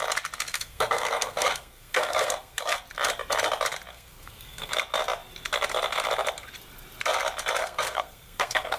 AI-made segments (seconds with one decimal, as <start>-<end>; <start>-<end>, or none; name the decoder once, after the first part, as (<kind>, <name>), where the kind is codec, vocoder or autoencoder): 0.5-2.8 (codec, SNAC); 3.9-4.7; 7.6-8.8